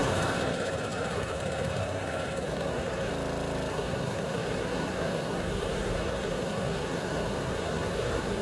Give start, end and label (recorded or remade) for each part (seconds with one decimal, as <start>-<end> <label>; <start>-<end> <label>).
0.0-3.1 remade; 3.1-3.7 recorded; 3.7-8.4 remade